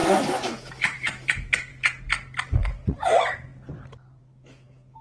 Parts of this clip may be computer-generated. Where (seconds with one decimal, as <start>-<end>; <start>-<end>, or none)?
0.0-1.7; 4.2-5.0